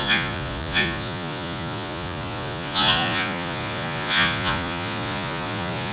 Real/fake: fake